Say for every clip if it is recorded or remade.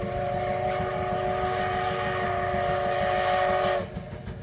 recorded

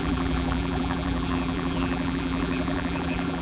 remade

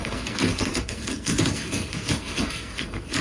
remade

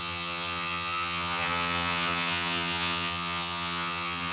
remade